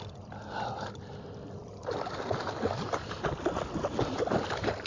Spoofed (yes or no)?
no